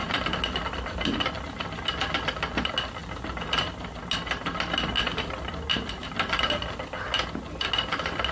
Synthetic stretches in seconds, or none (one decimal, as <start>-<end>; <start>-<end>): none